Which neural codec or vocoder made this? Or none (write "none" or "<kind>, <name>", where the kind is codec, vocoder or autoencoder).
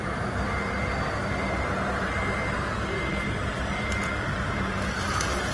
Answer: none